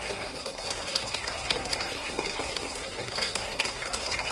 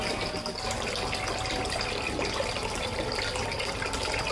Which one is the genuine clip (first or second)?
second